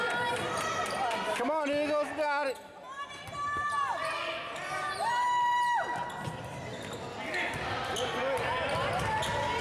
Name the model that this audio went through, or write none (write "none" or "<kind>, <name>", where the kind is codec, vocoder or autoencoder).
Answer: none